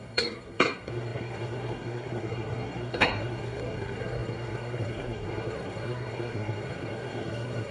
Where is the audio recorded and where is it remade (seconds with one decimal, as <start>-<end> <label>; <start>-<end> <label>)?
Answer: 0.0-7.7 remade